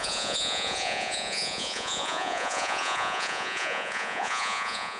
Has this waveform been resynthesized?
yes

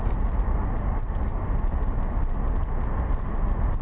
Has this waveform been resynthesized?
no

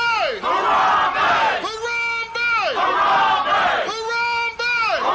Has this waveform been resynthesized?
no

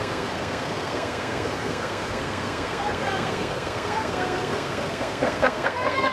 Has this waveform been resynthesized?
yes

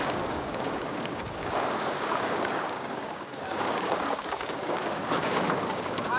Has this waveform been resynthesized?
yes